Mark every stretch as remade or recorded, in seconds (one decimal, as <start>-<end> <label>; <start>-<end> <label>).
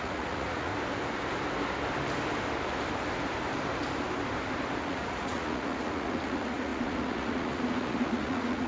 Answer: 0.0-0.7 remade; 0.7-4.8 recorded; 4.8-8.7 remade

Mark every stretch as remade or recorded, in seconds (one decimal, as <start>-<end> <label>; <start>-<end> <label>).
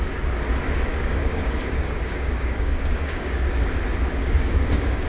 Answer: 0.0-0.9 recorded; 0.9-3.7 remade; 3.7-4.2 recorded; 4.2-5.1 remade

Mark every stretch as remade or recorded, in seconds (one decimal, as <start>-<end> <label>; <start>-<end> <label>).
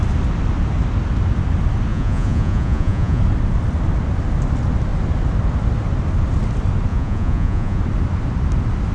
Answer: 0.0-1.9 recorded; 1.9-3.2 remade; 3.2-6.9 recorded; 6.9-7.8 remade; 7.8-8.9 recorded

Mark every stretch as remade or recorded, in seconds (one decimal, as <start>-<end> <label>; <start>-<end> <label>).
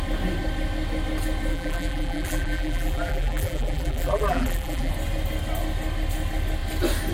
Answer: 0.0-1.5 recorded; 1.5-4.9 remade; 4.9-7.1 recorded